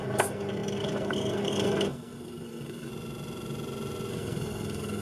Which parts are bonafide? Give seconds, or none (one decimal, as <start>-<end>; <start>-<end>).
2.9-4.1